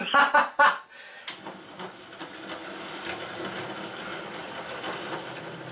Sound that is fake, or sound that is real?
real